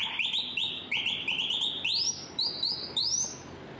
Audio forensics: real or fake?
real